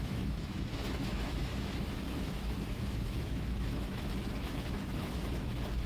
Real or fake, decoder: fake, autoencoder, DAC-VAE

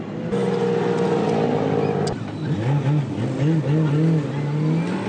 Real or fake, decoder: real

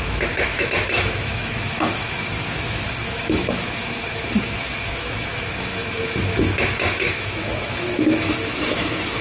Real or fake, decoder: fake, autoencoder, DAC-VAE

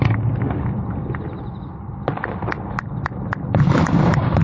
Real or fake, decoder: real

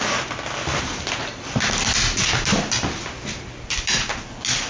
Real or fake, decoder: real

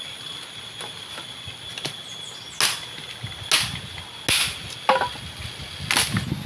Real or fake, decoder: real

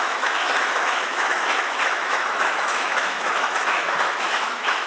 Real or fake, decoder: fake, autoencoder, DAC-VAE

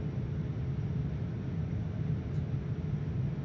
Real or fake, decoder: real